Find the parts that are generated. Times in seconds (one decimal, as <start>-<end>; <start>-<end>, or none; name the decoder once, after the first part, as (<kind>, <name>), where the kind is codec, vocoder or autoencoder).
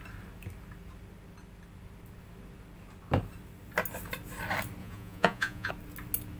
4.8-5.7 (vocoder, Vocos)